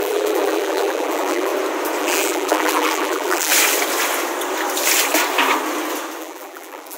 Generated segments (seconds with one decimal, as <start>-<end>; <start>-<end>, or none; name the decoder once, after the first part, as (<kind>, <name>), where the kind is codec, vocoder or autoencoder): 0.0-1.5 (vocoder, BigVGAN v2); 2.0-3.5; 6.2-7.0